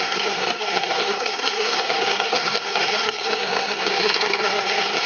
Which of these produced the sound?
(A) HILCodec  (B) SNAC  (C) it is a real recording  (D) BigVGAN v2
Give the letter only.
B